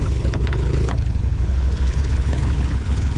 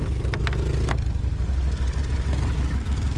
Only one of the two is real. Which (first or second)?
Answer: second